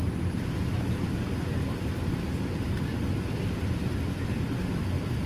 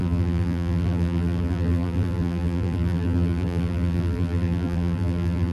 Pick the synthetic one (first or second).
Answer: second